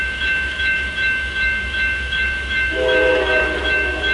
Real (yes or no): no